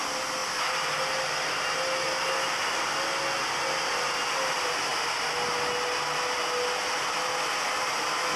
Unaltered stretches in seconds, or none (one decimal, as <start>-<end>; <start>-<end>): 0.0-8.4